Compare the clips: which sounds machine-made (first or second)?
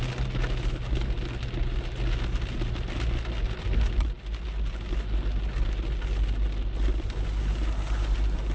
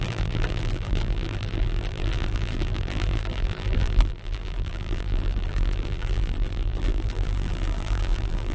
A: second